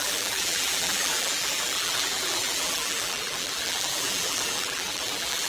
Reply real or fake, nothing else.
fake